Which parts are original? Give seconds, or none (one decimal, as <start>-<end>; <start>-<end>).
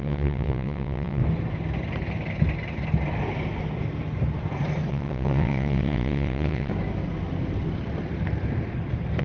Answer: 1.2-4.9; 6.7-9.2